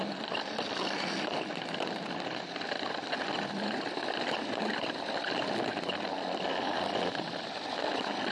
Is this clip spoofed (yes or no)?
no